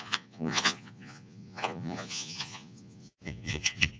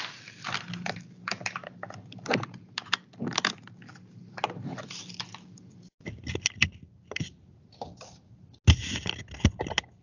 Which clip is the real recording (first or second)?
second